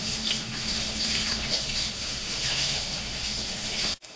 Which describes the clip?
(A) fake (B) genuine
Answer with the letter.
A